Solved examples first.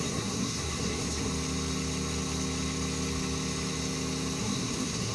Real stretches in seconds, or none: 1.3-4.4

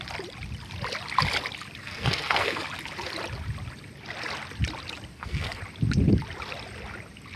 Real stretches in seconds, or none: 0.0-1.8; 2.6-5.1; 5.6-7.4

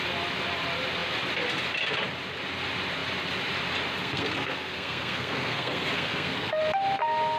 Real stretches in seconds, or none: 0.0-4.0; 6.6-7.4

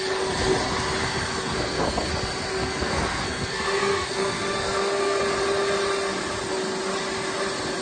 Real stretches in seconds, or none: 0.0-1.0; 2.1-2.5; 5.2-7.8

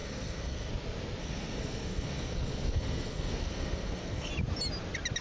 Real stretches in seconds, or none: 0.7-1.2; 4.3-5.2

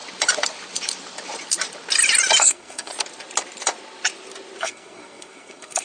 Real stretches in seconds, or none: 0.0-2.4; 2.9-4.6

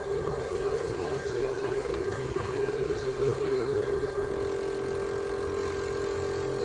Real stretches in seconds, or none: 4.3-6.6

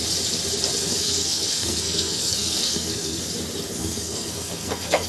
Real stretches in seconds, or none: 0.0-0.8; 3.2-3.8